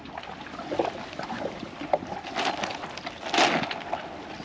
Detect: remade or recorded recorded